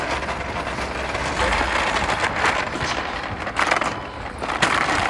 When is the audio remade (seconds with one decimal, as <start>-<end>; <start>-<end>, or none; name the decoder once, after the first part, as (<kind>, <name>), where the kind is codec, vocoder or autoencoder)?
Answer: none